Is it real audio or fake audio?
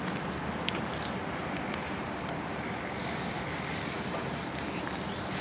real